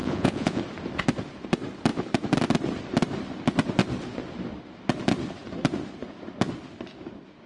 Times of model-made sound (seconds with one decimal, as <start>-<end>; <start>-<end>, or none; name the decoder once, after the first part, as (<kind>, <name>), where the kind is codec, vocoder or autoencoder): 0.0-0.6 (vocoder, Vocos)